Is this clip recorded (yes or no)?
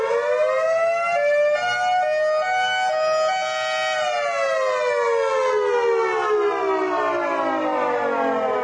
yes